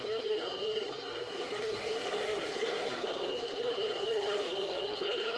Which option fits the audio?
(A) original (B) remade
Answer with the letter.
B